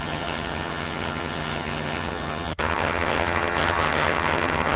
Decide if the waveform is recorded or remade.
remade